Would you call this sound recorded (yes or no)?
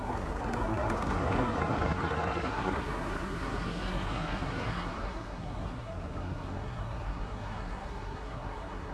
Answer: no